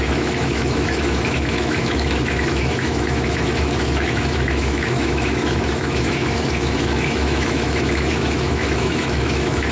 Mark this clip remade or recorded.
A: remade